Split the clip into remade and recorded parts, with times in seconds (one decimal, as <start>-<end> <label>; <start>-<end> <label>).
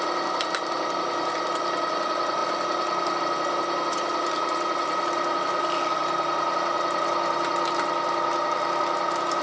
0.0-9.4 recorded